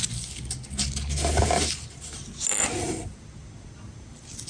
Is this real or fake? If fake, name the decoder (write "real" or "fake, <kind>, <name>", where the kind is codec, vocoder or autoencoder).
real